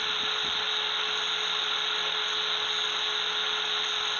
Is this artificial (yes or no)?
no